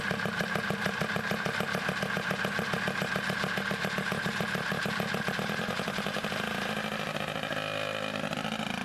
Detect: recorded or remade recorded